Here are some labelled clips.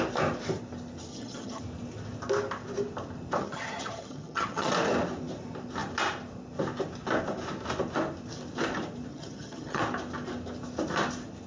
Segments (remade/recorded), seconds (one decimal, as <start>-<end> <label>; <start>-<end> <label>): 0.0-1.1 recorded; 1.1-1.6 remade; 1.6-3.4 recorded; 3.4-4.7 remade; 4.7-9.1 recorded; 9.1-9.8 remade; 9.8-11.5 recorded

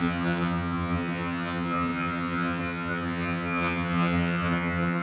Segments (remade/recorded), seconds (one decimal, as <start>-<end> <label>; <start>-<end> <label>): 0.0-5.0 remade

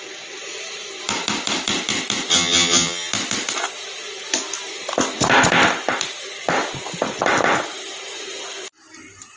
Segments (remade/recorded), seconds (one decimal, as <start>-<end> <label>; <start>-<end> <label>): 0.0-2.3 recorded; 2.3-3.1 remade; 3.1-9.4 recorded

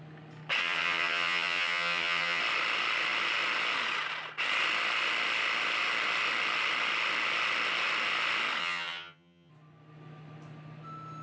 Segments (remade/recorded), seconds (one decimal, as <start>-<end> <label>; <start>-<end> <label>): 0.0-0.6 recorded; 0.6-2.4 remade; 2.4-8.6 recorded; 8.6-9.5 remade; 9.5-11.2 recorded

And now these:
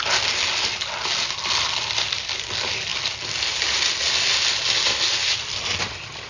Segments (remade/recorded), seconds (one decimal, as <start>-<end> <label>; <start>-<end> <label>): 0.0-6.3 recorded